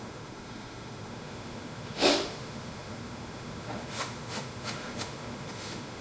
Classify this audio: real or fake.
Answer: fake